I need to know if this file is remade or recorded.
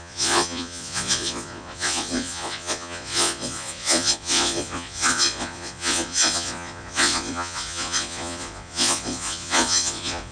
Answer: remade